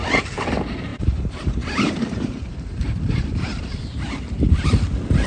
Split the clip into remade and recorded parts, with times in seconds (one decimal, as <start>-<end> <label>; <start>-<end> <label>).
0.0-0.9 recorded; 0.9-4.0 remade; 4.0-5.3 recorded